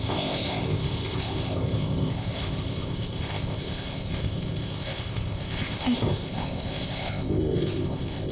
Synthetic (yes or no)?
yes